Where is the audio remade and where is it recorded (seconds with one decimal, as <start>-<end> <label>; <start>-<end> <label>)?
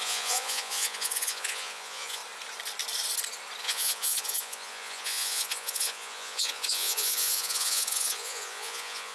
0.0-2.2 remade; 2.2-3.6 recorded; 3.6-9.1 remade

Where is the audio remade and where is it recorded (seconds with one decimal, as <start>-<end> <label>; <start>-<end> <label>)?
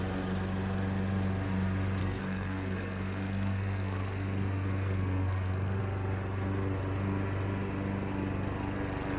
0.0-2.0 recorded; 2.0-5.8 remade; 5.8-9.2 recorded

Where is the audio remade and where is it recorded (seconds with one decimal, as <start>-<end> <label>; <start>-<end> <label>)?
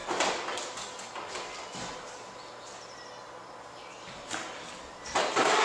0.0-5.6 recorded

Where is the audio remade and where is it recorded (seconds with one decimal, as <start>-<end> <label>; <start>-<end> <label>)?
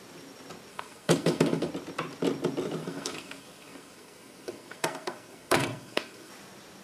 0.0-0.7 recorded; 0.7-1.7 remade; 1.7-2.8 recorded; 2.8-6.3 remade; 6.3-6.8 recorded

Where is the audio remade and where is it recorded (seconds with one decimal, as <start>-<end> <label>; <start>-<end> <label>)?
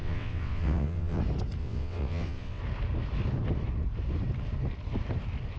0.0-1.2 remade; 1.2-1.6 recorded; 1.6-2.6 remade; 2.6-5.6 recorded